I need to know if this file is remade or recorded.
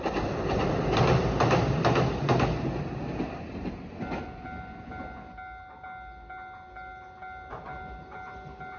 recorded